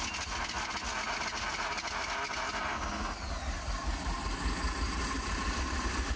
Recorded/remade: recorded